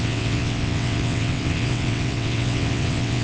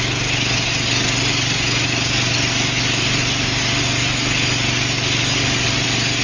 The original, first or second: second